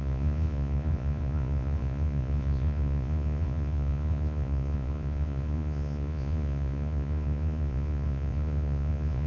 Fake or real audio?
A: fake